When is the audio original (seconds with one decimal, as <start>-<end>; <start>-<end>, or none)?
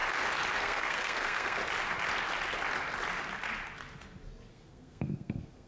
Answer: 0.0-0.6; 1.6-4.5